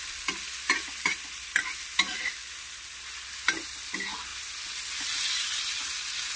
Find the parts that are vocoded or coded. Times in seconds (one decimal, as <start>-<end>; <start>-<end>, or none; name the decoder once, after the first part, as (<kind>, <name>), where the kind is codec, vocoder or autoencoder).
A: none